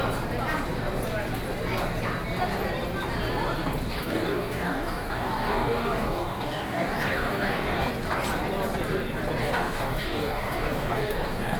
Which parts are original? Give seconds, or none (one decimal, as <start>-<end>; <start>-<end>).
0.0-3.9; 7.9-9.4